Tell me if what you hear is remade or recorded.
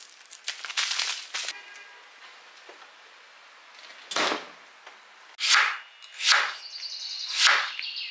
recorded